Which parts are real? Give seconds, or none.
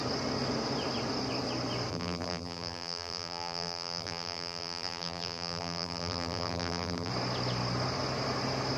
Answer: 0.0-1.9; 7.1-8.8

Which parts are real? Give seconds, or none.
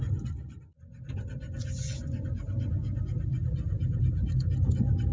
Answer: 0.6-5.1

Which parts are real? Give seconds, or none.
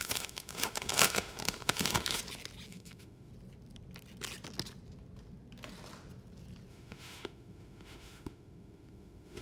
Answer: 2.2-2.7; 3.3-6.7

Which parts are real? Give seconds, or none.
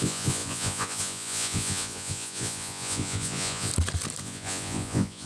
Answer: 3.7-4.2